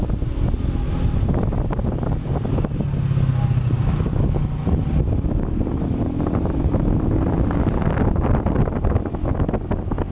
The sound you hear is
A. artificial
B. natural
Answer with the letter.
B